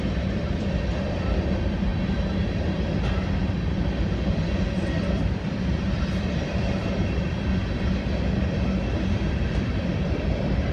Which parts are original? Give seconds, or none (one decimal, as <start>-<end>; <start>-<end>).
1.9-5.0